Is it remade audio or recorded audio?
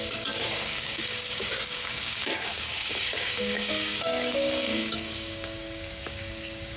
remade